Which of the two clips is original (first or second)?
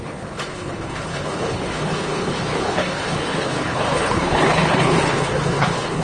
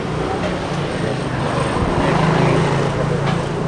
second